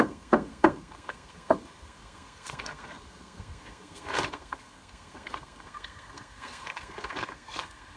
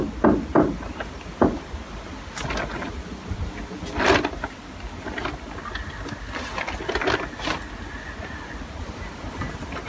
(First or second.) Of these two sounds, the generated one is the first